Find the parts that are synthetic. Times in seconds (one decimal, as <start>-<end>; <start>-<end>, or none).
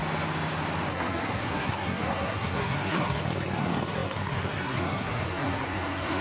0.9-6.2